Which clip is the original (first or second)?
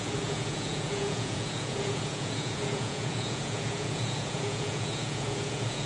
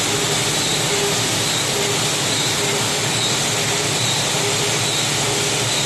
second